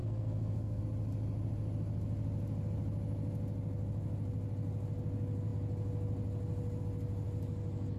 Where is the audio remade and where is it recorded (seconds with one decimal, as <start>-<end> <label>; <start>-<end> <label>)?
0.0-0.8 remade; 0.8-8.0 recorded